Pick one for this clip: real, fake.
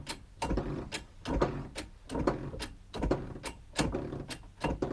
real